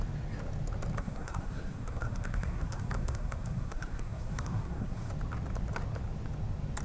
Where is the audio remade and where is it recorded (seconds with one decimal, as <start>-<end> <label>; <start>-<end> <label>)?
0.0-1.0 recorded; 1.0-5.1 remade; 5.1-6.8 recorded